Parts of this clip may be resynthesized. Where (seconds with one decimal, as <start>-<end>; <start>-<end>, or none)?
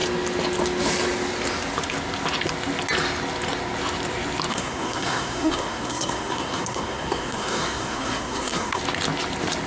4.5-8.8